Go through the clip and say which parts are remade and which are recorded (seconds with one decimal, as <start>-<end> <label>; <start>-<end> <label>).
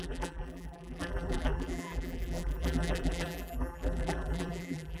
0.0-5.0 remade